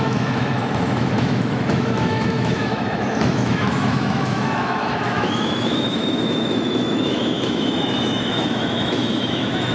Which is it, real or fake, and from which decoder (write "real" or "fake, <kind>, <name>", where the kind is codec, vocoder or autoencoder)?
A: fake, autoencoder, DAC-VAE